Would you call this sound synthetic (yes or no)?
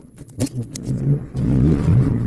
yes